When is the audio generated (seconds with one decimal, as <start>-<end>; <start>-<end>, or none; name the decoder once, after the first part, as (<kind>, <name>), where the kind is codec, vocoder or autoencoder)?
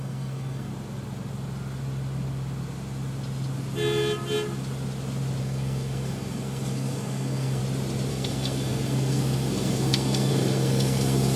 0.0-0.7 (codec, SNAC); 5.4-7.6; 8.1-11.4